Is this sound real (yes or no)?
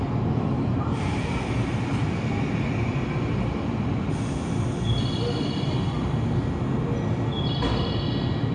yes